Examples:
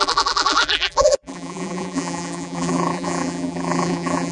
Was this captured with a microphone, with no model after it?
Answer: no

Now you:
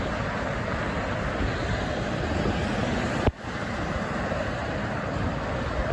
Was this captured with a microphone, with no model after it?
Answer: yes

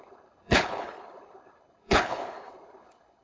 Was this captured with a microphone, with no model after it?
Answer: no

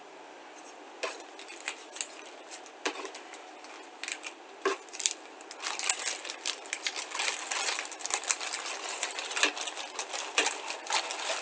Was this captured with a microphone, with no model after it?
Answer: yes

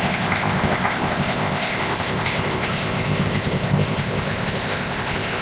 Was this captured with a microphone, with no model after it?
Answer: no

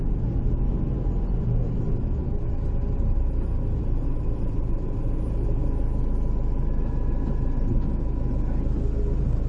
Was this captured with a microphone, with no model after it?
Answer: yes